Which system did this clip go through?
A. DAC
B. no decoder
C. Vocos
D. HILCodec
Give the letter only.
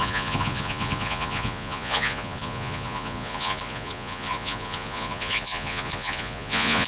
C